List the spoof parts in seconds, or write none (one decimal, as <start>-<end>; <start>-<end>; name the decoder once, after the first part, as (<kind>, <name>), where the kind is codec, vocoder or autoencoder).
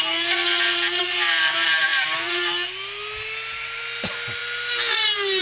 none